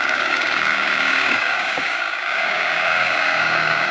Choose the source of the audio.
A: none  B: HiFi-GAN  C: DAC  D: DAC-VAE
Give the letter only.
C